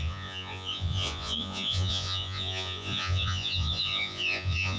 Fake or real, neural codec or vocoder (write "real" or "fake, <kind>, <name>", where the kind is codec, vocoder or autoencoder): fake, vocoder, Vocos